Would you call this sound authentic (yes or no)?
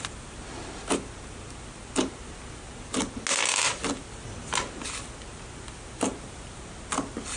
yes